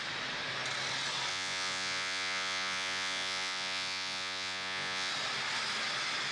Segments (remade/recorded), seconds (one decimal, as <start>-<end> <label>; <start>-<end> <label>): 0.0-1.3 recorded; 1.3-5.1 remade; 5.1-6.3 recorded